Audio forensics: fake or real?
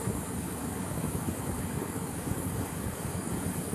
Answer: fake